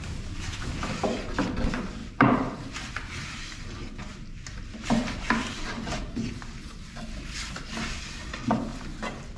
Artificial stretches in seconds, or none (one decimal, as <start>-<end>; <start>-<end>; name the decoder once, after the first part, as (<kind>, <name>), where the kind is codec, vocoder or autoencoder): 2.0-2.7 (vocoder, BigVGAN v2)